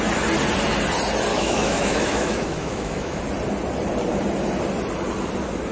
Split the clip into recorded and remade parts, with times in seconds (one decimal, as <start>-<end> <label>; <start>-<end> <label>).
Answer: 0.0-1.3 recorded; 1.3-3.2 remade; 3.2-5.7 recorded